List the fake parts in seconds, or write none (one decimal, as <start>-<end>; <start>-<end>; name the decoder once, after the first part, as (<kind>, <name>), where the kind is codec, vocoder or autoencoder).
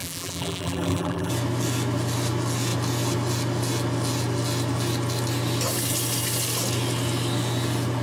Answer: 0.0-1.3 (vocoder, BigVGAN v2)